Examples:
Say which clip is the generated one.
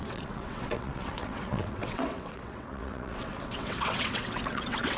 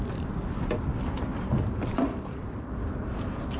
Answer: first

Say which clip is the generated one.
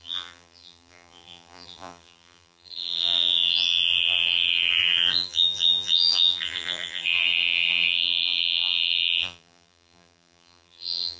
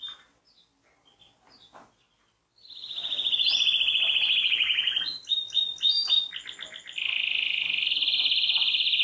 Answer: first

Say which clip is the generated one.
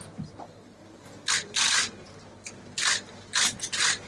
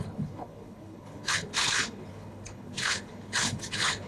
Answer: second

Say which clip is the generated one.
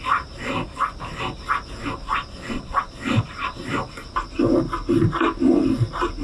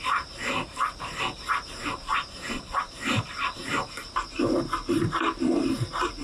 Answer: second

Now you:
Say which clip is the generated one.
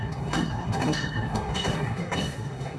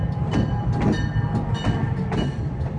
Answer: first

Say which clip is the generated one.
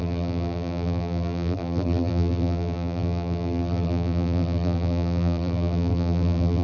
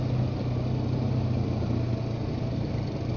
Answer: first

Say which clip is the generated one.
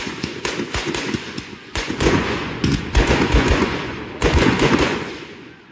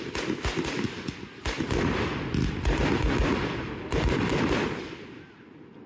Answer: first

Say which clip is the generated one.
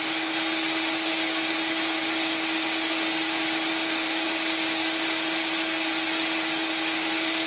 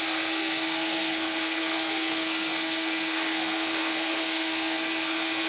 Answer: second